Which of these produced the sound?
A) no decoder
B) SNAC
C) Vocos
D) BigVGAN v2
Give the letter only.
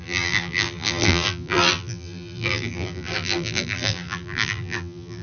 D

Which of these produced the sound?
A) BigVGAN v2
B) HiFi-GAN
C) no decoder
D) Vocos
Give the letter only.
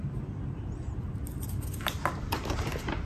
A